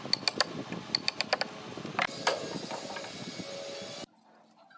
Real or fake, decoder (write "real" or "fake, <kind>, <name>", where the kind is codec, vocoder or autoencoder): real